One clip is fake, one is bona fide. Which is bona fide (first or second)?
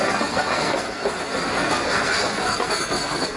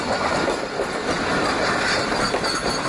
second